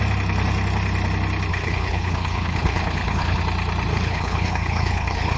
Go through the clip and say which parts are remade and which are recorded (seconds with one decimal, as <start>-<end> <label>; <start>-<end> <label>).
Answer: 0.0-1.5 recorded; 1.5-3.4 remade; 3.4-3.9 recorded; 3.9-5.4 remade